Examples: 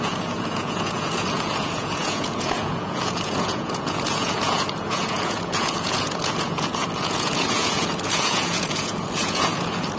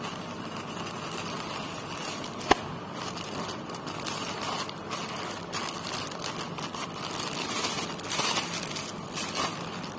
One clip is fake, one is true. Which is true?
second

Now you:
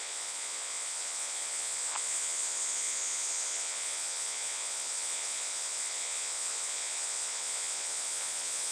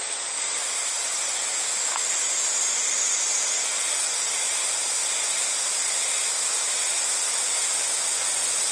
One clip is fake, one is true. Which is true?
second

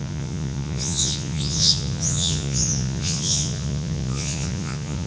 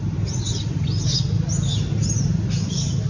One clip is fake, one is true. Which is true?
second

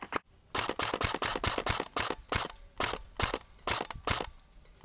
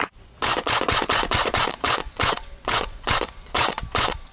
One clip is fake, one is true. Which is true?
first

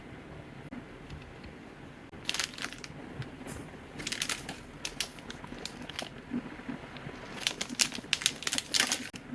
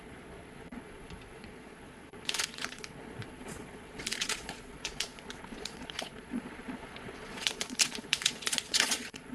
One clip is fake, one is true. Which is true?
first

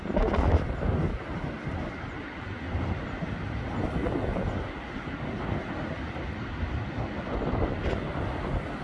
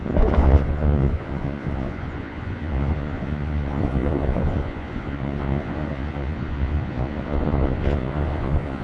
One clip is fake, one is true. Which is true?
first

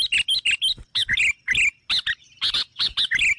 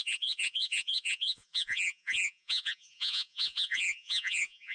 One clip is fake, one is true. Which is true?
first